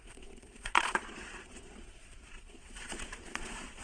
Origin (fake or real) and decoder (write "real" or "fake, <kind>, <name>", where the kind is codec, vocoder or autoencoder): fake, vocoder, Vocos